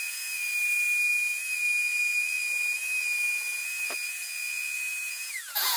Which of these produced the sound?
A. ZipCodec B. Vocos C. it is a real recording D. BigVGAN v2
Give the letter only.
B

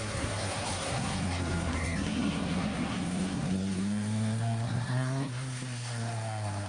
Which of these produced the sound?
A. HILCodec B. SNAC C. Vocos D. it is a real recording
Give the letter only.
B